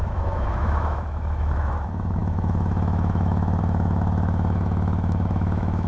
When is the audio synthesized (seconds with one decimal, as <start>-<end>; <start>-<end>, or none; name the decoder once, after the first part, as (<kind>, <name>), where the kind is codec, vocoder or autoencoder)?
0.0-5.9 (autoencoder, DAC-VAE)